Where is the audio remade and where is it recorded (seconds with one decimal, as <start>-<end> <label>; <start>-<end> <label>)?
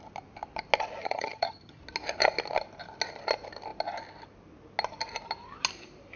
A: 0.0-1.0 recorded; 1.0-1.8 remade; 1.8-6.2 recorded